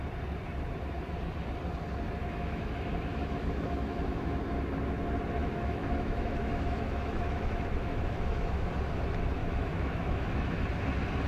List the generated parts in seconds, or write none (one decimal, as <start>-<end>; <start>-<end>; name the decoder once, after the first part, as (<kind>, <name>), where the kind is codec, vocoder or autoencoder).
2.2-4.4 (autoencoder, DAC-VAE); 5.4-8.6; 9.4-10.6